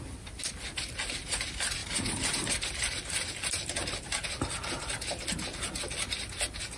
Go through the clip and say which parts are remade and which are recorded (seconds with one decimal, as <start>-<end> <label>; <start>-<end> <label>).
0.0-6.8 recorded